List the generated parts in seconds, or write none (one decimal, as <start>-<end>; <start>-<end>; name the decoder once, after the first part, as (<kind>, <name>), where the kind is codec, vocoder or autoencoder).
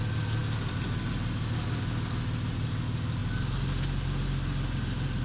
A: none